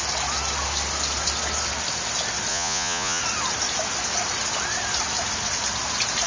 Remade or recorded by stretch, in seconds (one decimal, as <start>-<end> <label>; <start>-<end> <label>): 0.0-2.5 recorded; 2.5-3.2 remade; 3.2-6.3 recorded